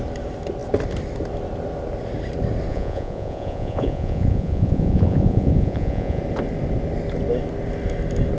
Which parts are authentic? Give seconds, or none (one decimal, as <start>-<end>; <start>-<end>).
0.0-2.7; 6.2-8.4